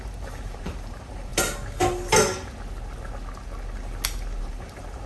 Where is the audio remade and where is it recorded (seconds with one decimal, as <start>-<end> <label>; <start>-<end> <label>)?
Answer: 0.0-1.3 remade; 1.3-4.4 recorded; 4.4-5.1 remade